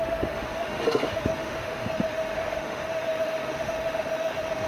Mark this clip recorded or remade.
remade